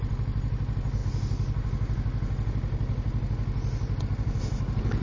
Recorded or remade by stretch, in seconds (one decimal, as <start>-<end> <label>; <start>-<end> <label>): 0.0-5.0 recorded